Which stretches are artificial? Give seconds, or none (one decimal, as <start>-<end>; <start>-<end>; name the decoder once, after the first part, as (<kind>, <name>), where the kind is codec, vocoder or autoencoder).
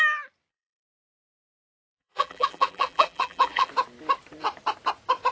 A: 0.5-3.7 (vocoder, BigVGAN v2)